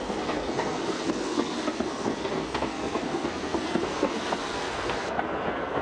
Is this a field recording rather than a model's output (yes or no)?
no